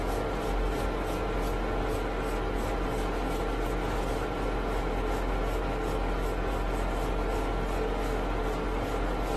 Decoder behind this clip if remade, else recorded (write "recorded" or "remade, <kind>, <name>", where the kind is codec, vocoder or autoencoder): recorded